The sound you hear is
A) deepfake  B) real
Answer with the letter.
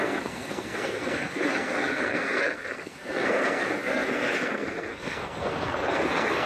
A